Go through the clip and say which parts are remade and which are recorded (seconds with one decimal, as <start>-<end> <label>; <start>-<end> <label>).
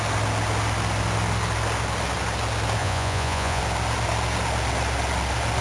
0.0-2.8 recorded; 2.8-3.6 remade; 3.6-5.6 recorded